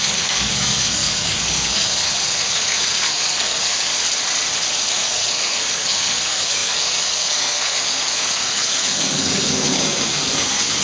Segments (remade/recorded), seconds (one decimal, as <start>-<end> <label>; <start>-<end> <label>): 0.0-3.9 remade; 3.9-4.9 recorded; 4.9-10.8 remade